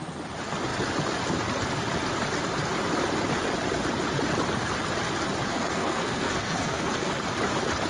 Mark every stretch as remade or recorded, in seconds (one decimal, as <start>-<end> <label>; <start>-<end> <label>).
0.0-5.5 recorded; 5.5-7.1 remade; 7.1-7.9 recorded